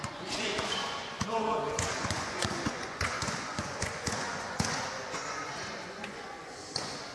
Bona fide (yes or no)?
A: no